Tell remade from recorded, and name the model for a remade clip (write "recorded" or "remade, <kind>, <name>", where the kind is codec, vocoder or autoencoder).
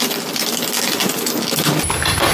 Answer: recorded